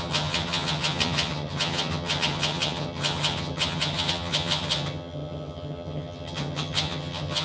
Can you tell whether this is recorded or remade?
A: remade